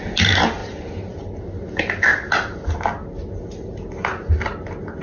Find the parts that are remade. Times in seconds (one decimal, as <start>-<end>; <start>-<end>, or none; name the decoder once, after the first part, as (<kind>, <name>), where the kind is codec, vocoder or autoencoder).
0.6-1.4 (vocoder, BigVGAN v2)